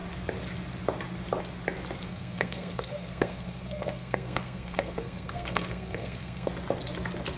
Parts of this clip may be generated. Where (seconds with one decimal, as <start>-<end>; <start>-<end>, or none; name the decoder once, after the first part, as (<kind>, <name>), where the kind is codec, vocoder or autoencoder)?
2.1-6.5 (codec, SNAC)